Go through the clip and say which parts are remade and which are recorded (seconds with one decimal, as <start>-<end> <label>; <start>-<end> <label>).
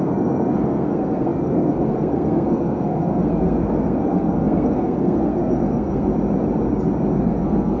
0.0-6.1 remade; 6.1-7.2 recorded; 7.2-7.8 remade